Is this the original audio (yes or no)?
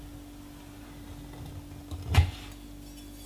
yes